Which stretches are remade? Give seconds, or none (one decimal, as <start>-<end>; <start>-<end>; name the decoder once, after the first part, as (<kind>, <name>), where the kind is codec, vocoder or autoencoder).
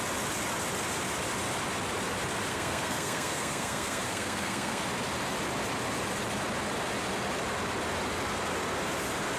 2.5-4.8 (codec, SNAC)